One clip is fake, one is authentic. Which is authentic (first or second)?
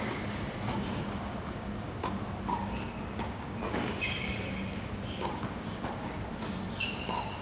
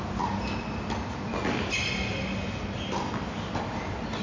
second